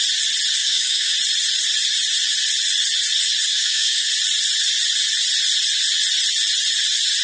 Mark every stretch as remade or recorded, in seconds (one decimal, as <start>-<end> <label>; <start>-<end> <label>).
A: 0.0-0.6 recorded; 0.6-1.1 remade; 1.1-3.5 recorded; 3.5-4.1 remade; 4.1-7.2 recorded